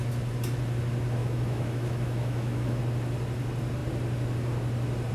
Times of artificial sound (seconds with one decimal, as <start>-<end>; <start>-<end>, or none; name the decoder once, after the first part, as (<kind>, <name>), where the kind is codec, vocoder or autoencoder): 1.2-2.8 (autoencoder, DAC-VAE)